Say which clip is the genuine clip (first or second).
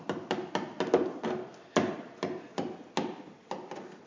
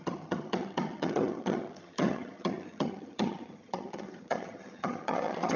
first